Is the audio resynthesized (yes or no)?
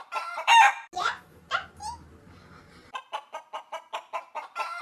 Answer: no